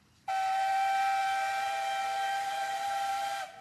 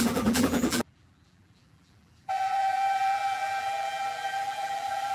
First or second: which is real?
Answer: first